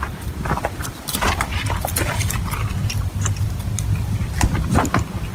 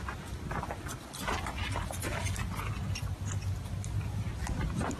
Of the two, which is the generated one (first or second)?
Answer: first